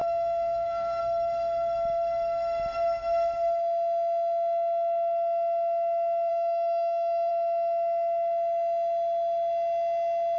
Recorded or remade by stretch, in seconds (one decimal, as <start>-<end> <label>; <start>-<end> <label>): 0.0-1.0 remade; 1.0-6.3 recorded; 6.3-7.3 remade; 7.3-10.4 recorded